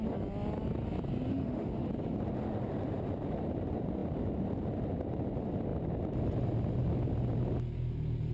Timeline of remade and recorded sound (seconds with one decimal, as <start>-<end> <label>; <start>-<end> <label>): 0.0-1.3 recorded; 1.3-1.9 remade; 1.9-8.3 recorded